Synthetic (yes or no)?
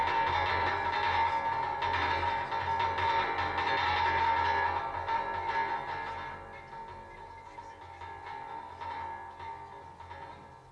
no